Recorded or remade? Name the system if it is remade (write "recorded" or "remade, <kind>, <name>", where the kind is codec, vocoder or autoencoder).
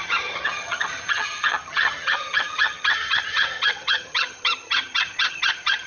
remade, vocoder, HiFi-GAN